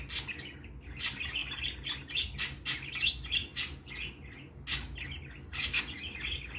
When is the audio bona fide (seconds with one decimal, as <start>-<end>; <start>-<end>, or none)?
0.0-6.6

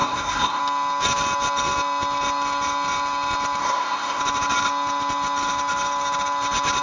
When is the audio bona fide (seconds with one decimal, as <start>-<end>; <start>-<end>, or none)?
0.6-3.6; 4.2-6.8

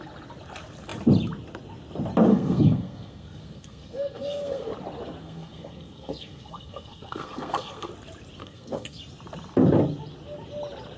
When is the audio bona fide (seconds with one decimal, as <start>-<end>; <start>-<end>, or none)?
0.0-2.3; 4.7-5.2; 7.9-8.4; 9.0-11.0

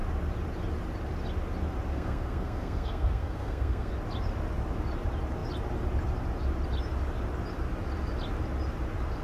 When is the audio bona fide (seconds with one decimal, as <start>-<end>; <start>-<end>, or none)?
0.0-1.9; 3.9-9.2